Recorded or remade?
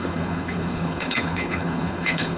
remade